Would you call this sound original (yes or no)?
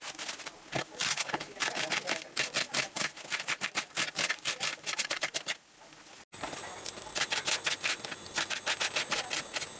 yes